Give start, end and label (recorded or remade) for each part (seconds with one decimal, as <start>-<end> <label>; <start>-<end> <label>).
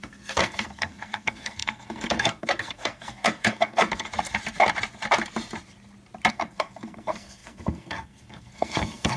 0.0-4.1 remade; 4.1-6.3 recorded; 6.3-9.2 remade